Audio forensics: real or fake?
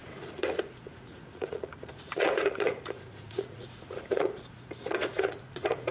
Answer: fake